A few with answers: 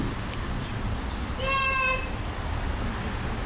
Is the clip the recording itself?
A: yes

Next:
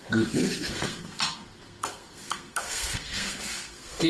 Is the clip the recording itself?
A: no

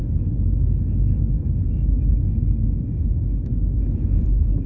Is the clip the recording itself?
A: no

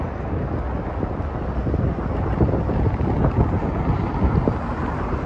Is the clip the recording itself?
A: yes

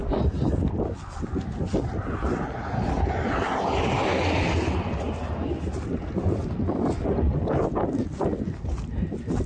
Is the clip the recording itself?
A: yes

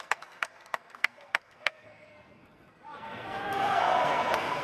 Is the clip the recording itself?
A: no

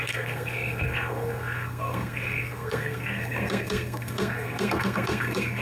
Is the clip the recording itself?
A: no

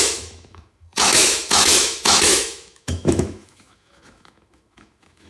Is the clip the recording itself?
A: no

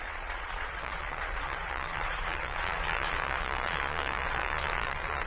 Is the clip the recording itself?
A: no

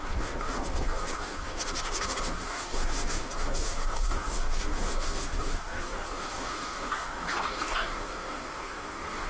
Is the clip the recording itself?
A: no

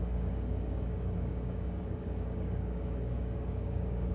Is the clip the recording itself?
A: no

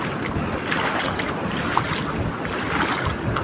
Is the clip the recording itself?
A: yes